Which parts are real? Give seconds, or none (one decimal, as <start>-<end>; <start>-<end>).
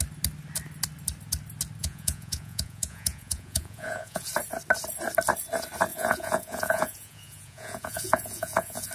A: 0.0-1.8; 4.3-5.9